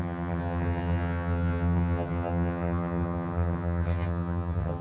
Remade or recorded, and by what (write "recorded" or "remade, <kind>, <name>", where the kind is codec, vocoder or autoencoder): remade, vocoder, HiFi-GAN